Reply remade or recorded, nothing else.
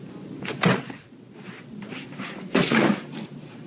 recorded